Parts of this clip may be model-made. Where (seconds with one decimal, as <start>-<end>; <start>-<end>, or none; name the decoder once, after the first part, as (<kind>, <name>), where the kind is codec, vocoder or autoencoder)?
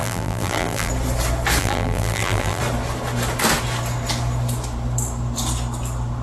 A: 0.0-0.9 (vocoder, BigVGAN v2); 1.6-2.6